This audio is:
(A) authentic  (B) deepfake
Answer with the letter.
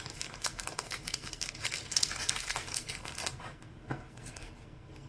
B